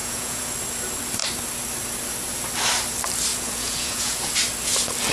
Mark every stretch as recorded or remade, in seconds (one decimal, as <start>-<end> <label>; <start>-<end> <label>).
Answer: 0.0-0.5 remade; 0.5-3.3 recorded; 3.3-4.3 remade; 4.3-5.1 recorded